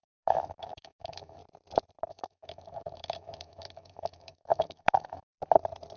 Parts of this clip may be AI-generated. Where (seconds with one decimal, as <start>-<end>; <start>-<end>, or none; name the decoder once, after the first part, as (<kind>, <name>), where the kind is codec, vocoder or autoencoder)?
0.0-1.4 (autoencoder, DAC-VAE); 2.1-5.3